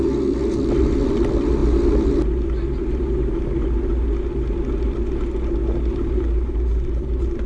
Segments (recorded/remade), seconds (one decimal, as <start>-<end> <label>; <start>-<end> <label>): 0.0-7.5 recorded